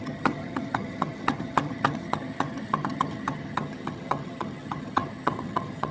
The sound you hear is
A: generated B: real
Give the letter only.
A